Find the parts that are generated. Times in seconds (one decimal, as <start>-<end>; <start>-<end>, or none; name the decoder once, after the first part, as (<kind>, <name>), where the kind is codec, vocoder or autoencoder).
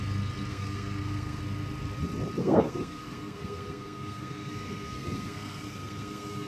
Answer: 0.5-1.4 (codec, SNAC); 2.4-6.5